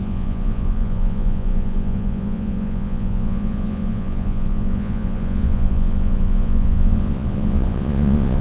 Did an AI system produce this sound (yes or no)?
yes